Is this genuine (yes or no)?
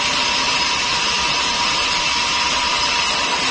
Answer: yes